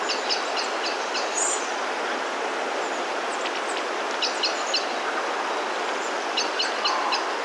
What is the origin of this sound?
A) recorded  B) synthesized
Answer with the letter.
A